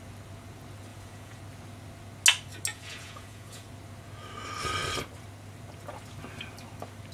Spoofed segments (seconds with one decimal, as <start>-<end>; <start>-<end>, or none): 0.9-1.4; 2.7-3.7